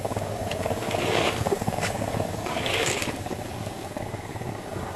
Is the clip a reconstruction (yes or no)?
yes